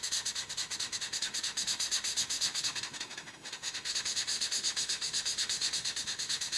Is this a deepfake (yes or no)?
yes